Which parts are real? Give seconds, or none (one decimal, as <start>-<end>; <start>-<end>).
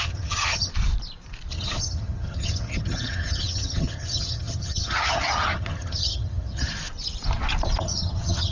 0.7-1.5; 6.7-7.8